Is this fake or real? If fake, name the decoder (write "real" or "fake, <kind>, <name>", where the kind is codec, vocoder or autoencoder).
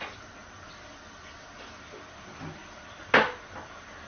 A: real